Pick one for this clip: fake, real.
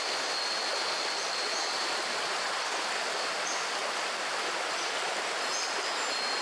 real